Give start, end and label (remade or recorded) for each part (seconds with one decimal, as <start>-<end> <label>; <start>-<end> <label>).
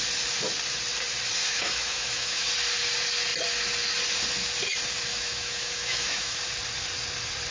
0.0-1.4 recorded; 1.4-2.5 remade; 2.5-5.1 recorded; 5.1-6.4 remade; 6.4-7.5 recorded